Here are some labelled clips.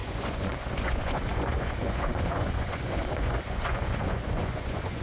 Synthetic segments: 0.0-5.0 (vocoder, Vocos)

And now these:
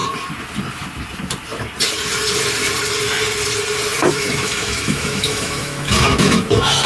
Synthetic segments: 4.1-6.9 (autoencoder, DAC-VAE)